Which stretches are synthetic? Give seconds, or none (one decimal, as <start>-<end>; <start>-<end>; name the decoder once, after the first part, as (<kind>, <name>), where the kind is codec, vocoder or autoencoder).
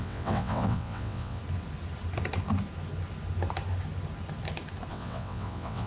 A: 0.0-1.4 (vocoder, WaveNeXt); 4.9-5.9